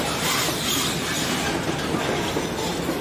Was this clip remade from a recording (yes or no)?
no